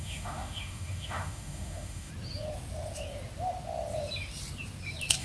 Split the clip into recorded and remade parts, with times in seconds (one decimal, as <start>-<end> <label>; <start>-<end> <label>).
0.0-2.1 remade; 2.1-5.2 recorded